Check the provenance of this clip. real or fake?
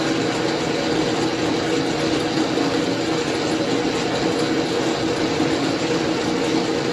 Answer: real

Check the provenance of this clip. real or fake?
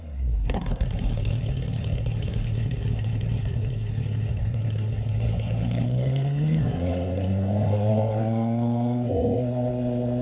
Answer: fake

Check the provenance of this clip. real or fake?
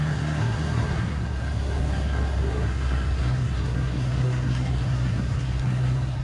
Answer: fake